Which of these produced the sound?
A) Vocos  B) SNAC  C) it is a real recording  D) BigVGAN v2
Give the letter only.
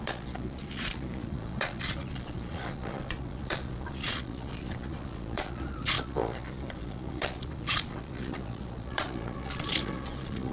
A